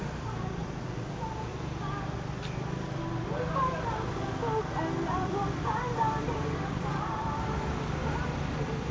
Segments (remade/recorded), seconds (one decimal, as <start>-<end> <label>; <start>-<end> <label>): 0.0-0.6 remade; 0.6-5.2 recorded; 5.2-8.9 remade